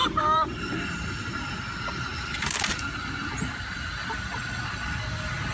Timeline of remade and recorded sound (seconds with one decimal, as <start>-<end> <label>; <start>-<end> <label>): 0.0-0.9 remade; 0.9-5.5 recorded